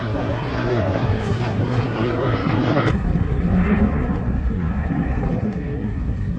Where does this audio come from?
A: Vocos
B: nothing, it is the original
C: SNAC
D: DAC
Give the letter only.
C